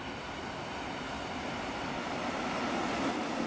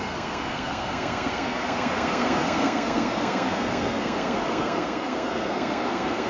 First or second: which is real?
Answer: first